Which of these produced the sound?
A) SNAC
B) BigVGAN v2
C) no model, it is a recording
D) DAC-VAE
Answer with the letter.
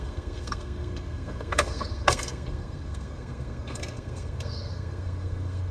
A